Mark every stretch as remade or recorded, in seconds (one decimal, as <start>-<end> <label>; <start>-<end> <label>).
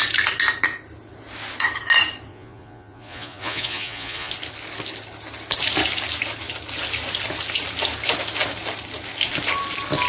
0.0-2.3 recorded; 2.3-4.3 remade; 4.3-10.1 recorded